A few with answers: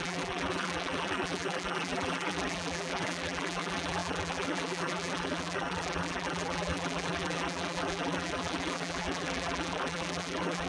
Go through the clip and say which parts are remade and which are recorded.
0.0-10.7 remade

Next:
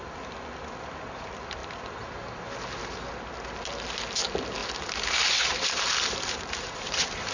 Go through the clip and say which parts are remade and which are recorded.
0.0-1.6 recorded; 1.6-2.5 remade; 2.5-4.6 recorded; 4.6-7.3 remade

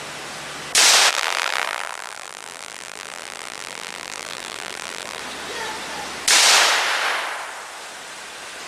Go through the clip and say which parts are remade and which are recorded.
0.0-1.1 recorded; 1.1-5.2 remade; 5.2-8.7 recorded

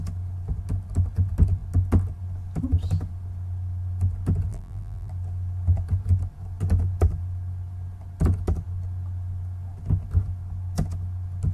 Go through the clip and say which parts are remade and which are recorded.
0.0-4.5 recorded; 4.5-5.1 remade; 5.1-11.5 recorded

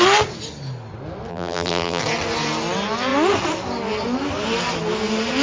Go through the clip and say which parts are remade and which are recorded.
0.0-1.3 recorded; 1.3-2.0 remade; 2.0-5.4 recorded

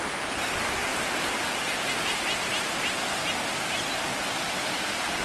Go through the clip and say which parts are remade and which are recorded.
0.0-4.4 recorded; 4.4-5.2 remade

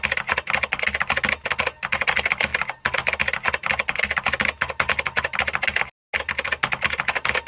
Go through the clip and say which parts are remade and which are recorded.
0.0-7.5 recorded

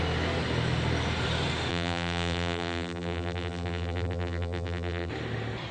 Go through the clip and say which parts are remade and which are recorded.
0.0-1.7 recorded; 1.7-5.1 remade; 5.1-5.7 recorded